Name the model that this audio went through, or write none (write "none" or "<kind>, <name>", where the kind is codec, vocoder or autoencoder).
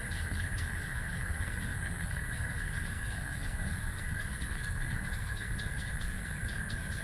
codec, SNAC